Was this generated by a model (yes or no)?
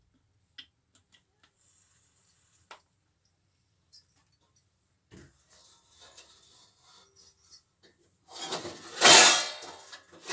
no